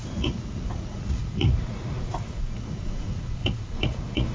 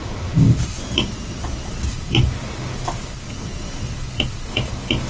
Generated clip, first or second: first